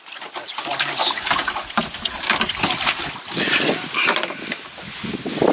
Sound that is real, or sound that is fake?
real